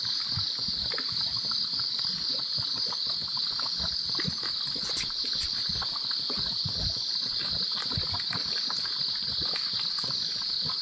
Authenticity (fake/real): real